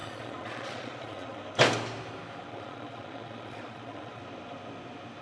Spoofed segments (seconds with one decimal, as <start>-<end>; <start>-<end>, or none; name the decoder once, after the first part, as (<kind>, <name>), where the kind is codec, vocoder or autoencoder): 0.0-1.4 (vocoder, Vocos); 2.5-4.2

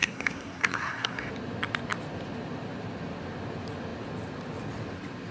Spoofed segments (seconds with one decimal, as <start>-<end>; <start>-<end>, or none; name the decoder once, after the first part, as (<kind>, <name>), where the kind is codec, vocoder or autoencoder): 0.0-1.3 (codec, SNAC)